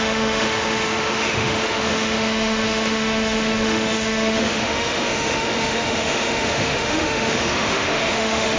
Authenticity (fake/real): fake